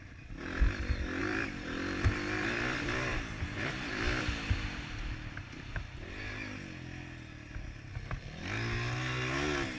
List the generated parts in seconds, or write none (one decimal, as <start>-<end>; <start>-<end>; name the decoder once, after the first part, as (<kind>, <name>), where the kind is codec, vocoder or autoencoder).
1.2-4.5 (vocoder, BigVGAN v2)